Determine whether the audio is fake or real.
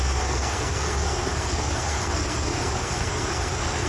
fake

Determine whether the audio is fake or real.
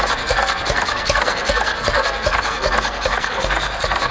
fake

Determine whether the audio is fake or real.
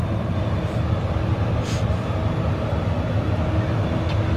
real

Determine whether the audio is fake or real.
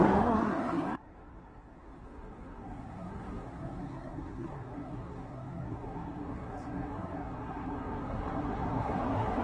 fake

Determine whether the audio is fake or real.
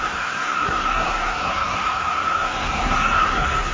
fake